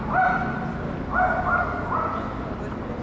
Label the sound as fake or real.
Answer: real